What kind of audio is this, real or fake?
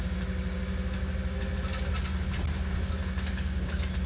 real